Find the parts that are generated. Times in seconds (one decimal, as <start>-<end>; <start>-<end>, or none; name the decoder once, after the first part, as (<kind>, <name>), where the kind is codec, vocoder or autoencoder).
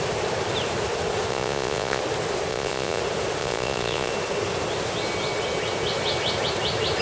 1.3-2.0 (vocoder, Vocos); 2.5-3.0; 3.4-4.1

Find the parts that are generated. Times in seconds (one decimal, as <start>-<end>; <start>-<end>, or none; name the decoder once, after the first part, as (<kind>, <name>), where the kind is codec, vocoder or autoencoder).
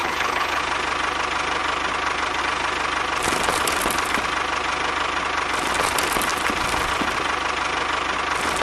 0.0-0.6 (codec, HILCodec)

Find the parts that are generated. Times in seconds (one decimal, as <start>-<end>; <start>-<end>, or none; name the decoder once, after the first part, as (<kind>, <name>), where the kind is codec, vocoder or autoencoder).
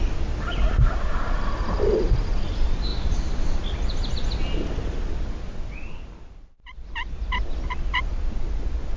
none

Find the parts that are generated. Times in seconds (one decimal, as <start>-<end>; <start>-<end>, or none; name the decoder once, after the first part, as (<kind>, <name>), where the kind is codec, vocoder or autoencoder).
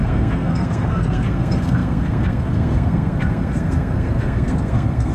0.0-5.1 (codec, SNAC)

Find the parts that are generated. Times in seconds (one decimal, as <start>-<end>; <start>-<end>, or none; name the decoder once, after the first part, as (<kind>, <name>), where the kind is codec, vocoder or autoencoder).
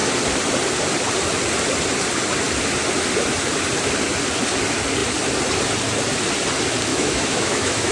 6.9-7.9 (autoencoder, DAC-VAE)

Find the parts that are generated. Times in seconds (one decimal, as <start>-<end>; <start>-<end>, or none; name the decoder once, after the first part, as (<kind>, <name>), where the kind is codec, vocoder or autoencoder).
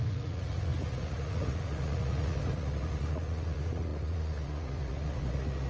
0.0-5.7 (vocoder, Vocos)